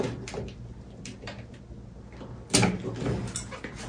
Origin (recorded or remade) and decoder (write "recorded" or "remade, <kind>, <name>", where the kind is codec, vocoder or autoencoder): recorded